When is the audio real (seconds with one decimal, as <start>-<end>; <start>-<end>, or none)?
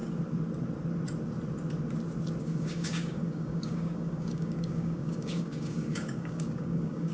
0.0-2.4